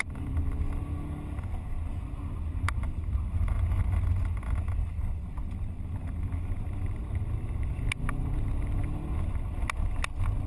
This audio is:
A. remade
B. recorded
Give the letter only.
B